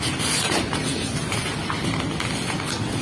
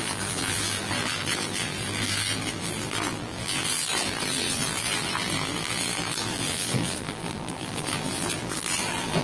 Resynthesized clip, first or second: second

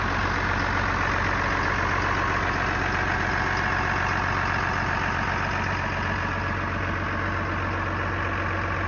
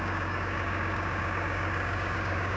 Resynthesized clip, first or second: second